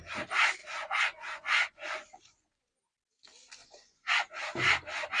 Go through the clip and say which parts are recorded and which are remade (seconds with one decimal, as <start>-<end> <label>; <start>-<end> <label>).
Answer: 0.0-0.6 recorded; 0.6-2.8 remade; 2.8-3.6 recorded; 3.6-4.1 remade; 4.1-5.2 recorded